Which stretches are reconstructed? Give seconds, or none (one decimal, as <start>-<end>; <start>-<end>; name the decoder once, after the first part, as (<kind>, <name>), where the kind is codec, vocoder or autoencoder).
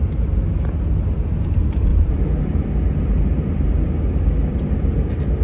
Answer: 1.9-5.4 (vocoder, BigVGAN v2)